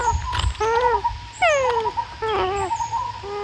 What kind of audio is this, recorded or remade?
recorded